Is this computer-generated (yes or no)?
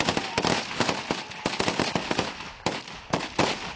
no